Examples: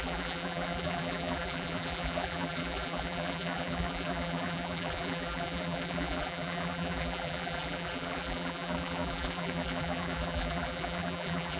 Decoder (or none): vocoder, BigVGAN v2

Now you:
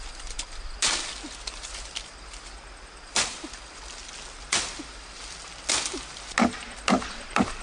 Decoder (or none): none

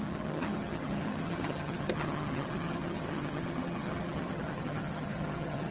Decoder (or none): vocoder, HiFi-GAN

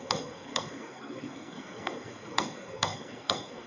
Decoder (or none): codec, SNAC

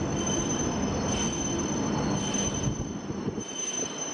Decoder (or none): none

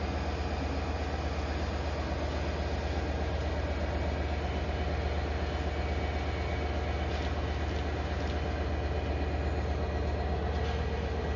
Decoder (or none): none